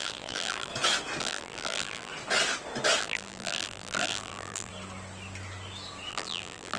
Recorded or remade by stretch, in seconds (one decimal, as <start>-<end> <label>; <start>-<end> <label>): 0.0-0.7 remade; 0.7-1.2 recorded; 1.2-2.1 remade; 2.1-3.0 recorded; 3.0-4.7 remade; 4.7-6.1 recorded; 6.1-6.8 remade

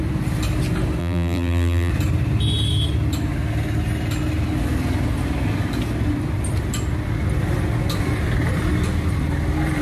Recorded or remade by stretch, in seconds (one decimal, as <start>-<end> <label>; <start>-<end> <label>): 0.0-1.0 recorded; 1.0-1.9 remade; 1.9-9.8 recorded